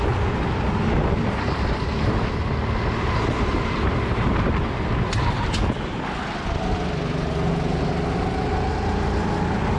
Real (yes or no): yes